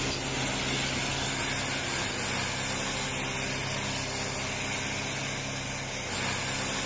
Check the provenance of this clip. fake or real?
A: real